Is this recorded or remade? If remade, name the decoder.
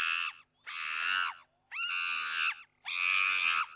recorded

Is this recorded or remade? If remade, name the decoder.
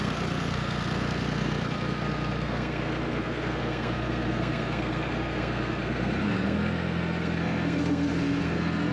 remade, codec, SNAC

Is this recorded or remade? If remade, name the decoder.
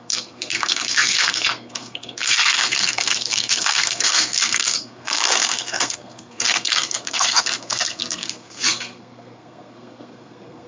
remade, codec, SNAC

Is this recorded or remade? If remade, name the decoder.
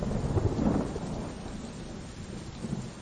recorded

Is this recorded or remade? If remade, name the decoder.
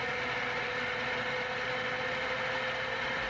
recorded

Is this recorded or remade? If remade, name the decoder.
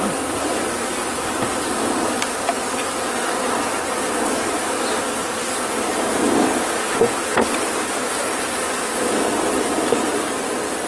recorded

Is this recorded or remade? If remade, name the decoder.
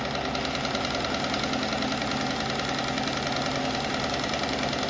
recorded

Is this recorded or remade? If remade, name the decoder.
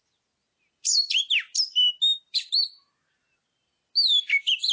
recorded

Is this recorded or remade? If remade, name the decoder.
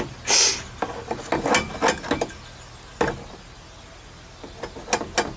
recorded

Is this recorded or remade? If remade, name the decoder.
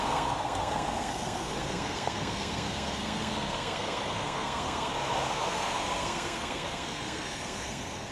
remade, codec, SNAC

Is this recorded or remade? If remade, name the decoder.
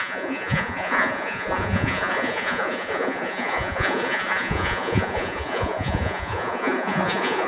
remade, vocoder, Vocos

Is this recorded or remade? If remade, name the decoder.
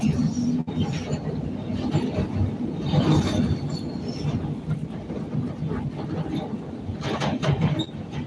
recorded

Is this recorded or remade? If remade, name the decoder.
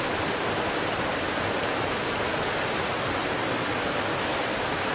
recorded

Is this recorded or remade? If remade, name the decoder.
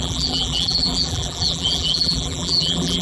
remade, vocoder, BigVGAN v2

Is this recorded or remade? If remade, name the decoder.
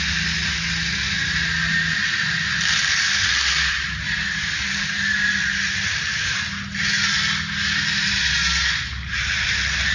recorded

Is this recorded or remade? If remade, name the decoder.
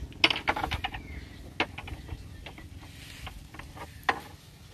recorded